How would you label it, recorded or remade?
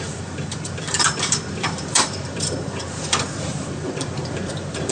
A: remade